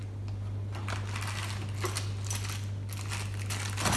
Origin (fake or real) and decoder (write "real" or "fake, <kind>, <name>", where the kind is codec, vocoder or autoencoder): real